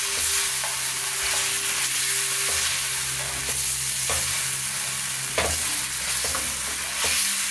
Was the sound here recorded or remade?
recorded